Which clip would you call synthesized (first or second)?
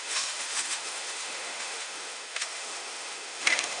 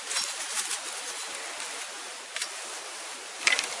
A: first